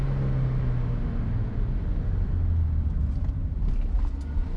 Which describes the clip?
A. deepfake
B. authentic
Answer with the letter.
B